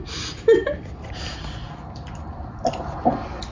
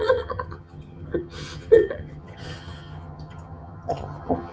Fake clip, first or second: second